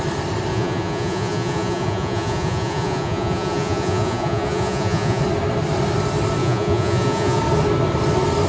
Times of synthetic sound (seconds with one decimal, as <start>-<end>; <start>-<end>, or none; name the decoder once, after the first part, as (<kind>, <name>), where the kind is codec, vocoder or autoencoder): 0.5-5.2 (vocoder, Vocos); 6.4-7.4